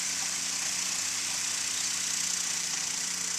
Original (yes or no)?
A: yes